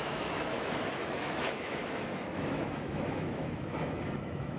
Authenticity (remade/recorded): remade